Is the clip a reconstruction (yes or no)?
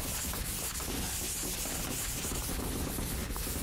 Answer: no